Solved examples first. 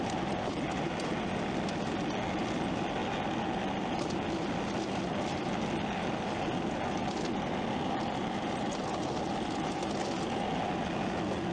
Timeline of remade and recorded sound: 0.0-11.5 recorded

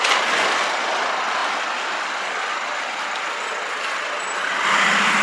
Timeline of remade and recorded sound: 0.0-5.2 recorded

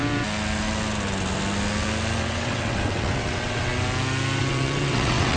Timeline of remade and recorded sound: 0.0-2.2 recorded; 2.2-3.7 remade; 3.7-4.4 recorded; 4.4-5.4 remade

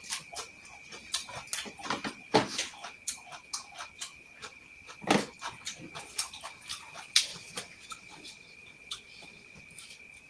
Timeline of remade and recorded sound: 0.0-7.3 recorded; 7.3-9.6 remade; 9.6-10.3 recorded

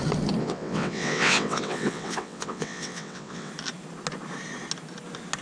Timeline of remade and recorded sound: 0.0-0.4 recorded; 0.4-3.5 remade; 3.5-5.4 recorded

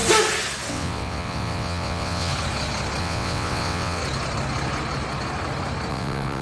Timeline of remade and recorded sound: 0.0-0.7 recorded; 0.7-2.3 remade; 2.3-3.0 recorded; 3.0-4.0 remade; 4.0-5.9 recorded; 5.9-6.4 remade

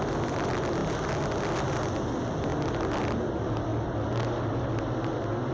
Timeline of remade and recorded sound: 0.0-5.5 recorded

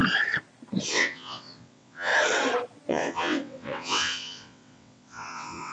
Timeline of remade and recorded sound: 0.0-0.9 recorded; 0.9-2.1 remade; 2.1-2.9 recorded; 2.9-5.7 remade